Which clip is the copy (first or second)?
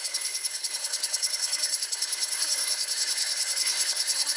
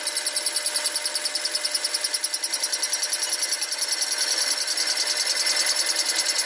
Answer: first